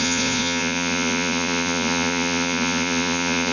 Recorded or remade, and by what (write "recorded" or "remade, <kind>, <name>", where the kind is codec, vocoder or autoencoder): remade, vocoder, Vocos